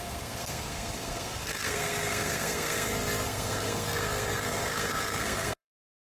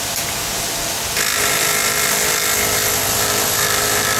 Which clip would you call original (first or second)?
second